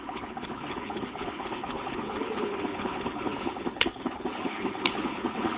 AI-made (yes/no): yes